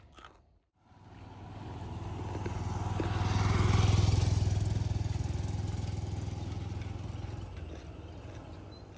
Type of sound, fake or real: real